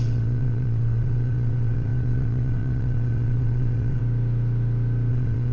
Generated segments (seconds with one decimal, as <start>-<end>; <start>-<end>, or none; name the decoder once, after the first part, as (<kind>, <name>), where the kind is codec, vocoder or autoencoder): 0.0-4.0 (vocoder, WaveNeXt); 5.1-5.5